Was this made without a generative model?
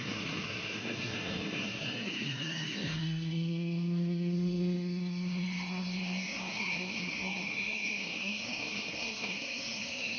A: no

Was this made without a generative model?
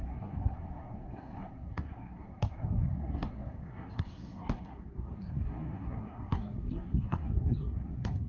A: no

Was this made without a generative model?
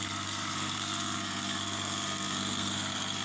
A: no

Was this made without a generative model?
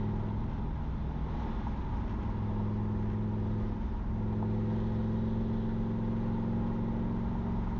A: yes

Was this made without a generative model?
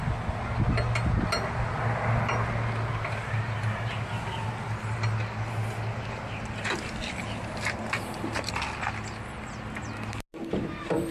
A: yes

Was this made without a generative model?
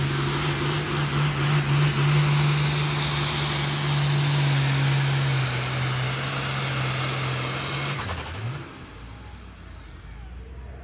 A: yes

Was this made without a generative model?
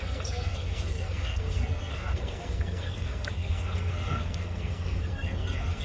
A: no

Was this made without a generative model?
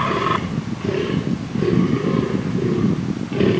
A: yes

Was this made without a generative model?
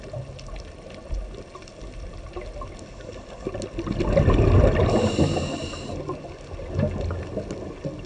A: yes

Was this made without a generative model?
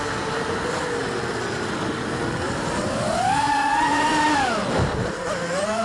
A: yes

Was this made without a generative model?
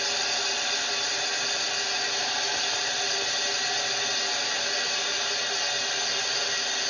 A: yes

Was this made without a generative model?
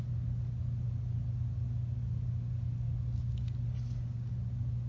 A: yes